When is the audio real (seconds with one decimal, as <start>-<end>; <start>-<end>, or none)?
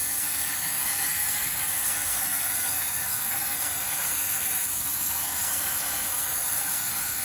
none